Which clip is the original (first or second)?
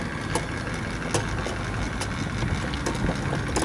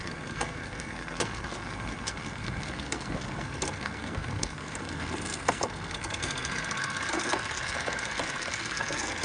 first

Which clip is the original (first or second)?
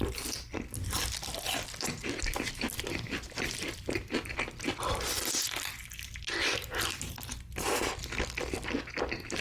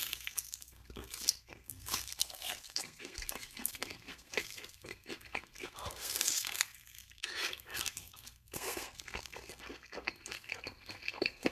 first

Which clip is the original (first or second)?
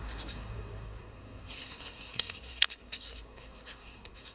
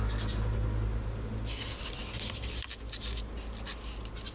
second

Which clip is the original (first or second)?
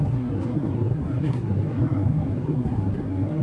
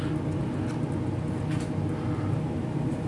second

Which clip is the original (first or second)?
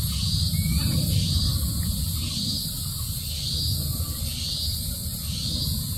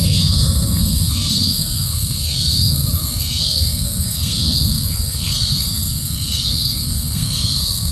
first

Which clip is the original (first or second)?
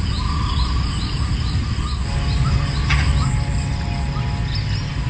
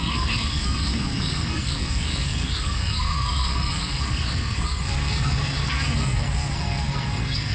first